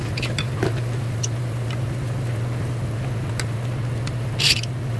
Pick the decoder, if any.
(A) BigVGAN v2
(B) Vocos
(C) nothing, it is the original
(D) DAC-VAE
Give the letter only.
C